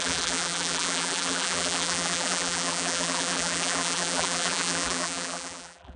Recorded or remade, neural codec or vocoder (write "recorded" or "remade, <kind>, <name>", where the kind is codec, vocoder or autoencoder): remade, vocoder, BigVGAN v2